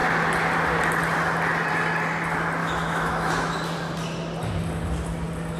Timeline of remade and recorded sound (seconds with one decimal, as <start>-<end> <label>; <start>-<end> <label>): 0.0-2.6 recorded; 2.6-3.3 remade; 3.3-5.6 recorded